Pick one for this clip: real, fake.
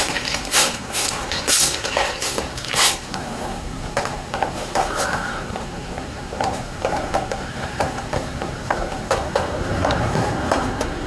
fake